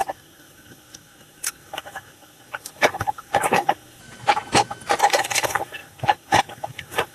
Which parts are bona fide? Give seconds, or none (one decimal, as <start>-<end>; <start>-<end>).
4.0-5.0